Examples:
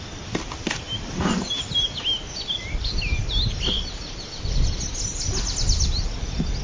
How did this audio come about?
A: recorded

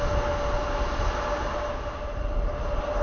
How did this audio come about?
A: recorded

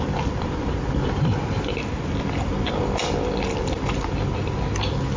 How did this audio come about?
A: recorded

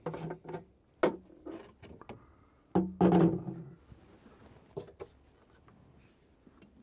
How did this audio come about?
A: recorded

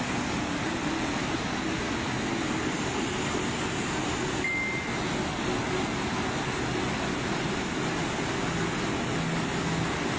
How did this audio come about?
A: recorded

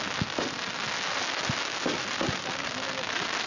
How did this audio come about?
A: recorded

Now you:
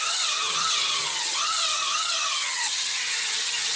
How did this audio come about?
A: remade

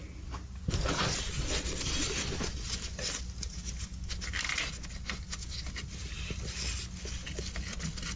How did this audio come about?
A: recorded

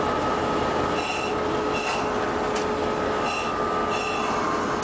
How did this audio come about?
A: recorded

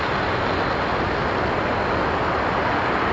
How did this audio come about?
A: recorded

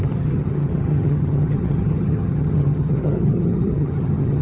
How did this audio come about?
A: remade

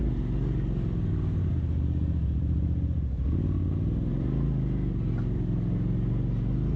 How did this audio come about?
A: recorded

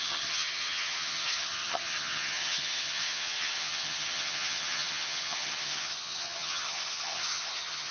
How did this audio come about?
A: remade